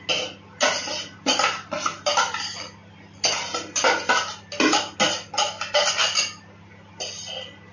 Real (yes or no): yes